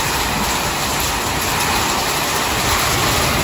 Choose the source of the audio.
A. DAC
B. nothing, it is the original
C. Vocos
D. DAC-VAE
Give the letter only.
B